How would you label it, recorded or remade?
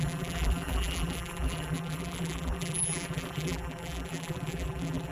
remade